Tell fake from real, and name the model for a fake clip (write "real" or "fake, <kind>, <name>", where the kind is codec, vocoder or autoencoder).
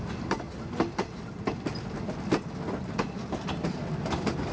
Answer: real